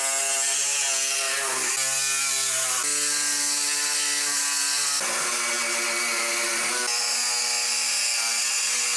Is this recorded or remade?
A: recorded